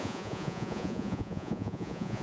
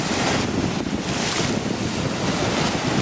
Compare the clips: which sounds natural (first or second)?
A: second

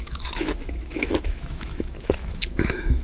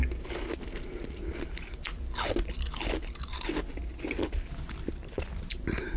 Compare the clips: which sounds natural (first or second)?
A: second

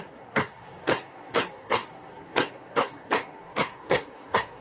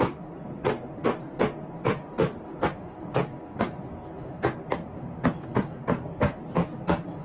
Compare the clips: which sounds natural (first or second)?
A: second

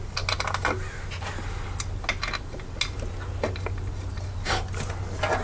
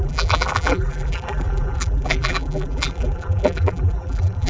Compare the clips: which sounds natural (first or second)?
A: first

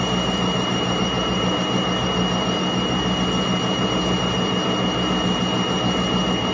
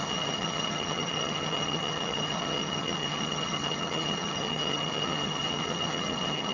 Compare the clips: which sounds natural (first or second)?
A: first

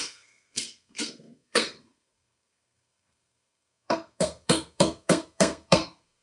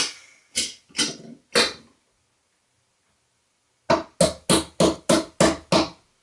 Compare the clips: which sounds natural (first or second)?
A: second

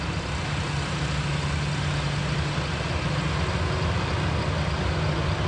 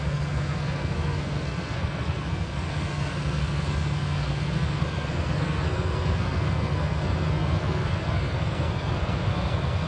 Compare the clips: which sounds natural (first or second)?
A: first